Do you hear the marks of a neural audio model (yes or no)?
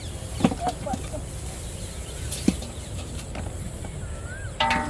no